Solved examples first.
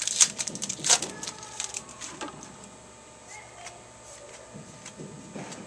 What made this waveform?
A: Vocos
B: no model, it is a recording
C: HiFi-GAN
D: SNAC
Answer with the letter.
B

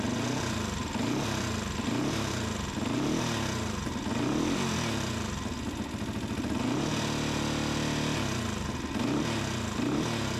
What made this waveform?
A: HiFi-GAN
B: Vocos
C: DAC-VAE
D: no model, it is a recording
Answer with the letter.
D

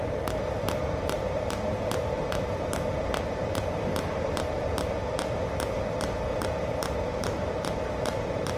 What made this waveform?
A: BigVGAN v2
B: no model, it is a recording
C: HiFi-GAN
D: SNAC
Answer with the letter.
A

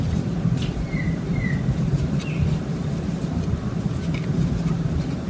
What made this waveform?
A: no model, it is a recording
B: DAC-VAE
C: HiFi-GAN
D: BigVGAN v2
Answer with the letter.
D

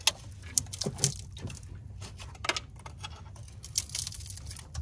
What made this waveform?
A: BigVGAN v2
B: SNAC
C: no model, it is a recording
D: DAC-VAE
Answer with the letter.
C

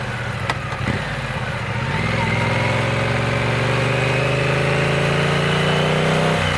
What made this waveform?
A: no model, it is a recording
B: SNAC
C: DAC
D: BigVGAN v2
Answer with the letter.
A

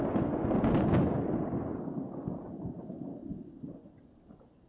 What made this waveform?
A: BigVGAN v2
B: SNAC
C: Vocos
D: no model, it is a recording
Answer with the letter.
D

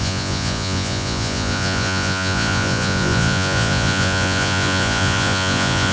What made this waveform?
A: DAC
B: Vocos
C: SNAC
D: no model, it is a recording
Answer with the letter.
B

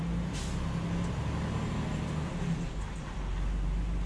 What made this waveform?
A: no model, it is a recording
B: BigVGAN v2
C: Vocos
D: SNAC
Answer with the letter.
A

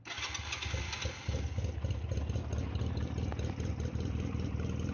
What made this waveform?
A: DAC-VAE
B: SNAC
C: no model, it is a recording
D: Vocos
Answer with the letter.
C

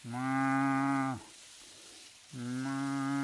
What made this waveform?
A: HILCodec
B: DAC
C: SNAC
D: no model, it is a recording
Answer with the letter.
D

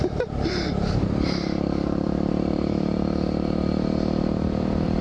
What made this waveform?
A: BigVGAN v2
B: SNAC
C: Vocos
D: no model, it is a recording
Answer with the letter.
A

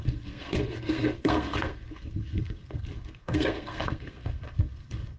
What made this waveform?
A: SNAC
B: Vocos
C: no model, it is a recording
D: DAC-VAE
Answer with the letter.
A